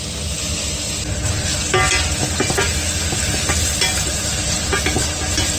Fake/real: real